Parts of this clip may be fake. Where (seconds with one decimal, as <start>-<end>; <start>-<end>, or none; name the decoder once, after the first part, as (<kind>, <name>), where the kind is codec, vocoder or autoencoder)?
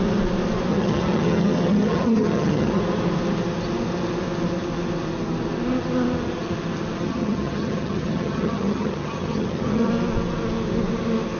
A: 0.7-2.8 (vocoder, HiFi-GAN); 7.0-9.9